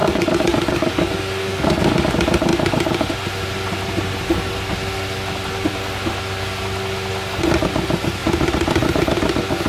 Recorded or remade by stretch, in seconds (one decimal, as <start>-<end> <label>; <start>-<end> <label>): 0.0-2.1 remade; 2.1-9.7 recorded